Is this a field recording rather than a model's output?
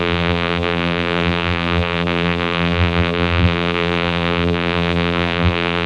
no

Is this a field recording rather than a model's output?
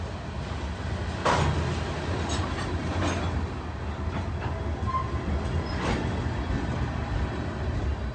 yes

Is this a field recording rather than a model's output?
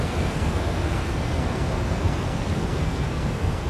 no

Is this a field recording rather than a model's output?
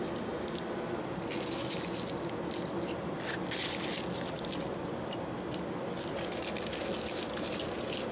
yes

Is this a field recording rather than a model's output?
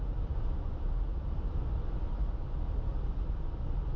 yes